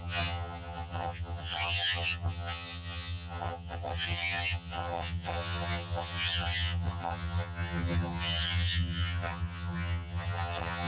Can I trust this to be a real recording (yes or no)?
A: no